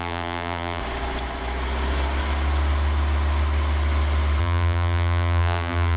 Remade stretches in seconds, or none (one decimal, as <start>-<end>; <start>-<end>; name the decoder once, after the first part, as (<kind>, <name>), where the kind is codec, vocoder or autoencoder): 0.0-0.8 (vocoder, BigVGAN v2); 4.4-6.0